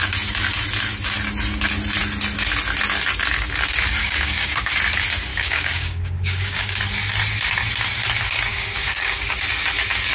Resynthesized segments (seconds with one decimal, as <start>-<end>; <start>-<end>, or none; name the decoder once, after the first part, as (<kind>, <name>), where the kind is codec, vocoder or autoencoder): 4.0-4.7 (codec, DAC); 5.3-6.8; 8.5-9.3